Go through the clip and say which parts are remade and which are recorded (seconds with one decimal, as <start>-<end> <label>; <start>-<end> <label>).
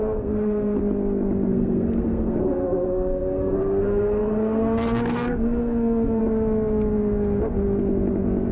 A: 0.0-0.8 remade; 0.8-1.5 recorded; 1.5-6.2 remade; 6.2-8.5 recorded